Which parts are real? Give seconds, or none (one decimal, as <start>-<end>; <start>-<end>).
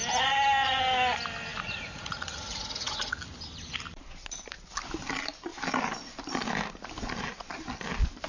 0.0-1.5; 3.2-8.3